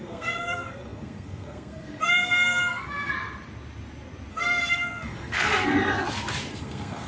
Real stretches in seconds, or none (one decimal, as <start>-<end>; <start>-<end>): 3.1-4.3; 5.7-6.5